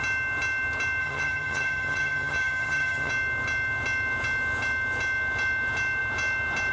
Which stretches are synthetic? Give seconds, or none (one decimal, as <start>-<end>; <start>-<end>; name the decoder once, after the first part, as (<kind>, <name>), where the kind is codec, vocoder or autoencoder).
1.0-3.1 (vocoder, HiFi-GAN)